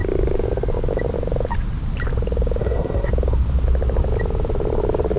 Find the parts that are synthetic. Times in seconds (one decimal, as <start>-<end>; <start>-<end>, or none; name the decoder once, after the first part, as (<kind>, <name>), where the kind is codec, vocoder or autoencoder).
2.6-3.1 (codec, SNAC)